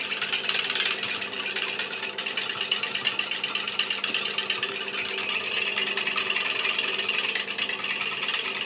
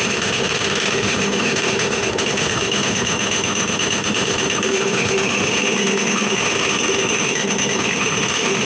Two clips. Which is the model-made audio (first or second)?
second